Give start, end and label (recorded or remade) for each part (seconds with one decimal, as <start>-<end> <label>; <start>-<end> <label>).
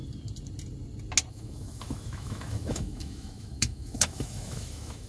0.0-1.3 recorded; 1.3-5.1 remade